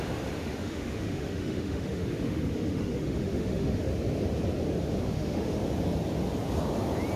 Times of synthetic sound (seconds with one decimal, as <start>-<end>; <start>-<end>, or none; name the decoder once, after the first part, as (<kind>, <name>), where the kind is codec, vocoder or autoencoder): 0.0-3.9 (autoencoder, DAC-VAE); 5.0-5.6